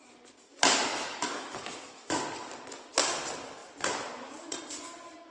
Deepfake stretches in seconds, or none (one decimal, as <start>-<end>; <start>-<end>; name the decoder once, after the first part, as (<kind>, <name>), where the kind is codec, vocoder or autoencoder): 0.9-2.2 (autoencoder, DAC-VAE)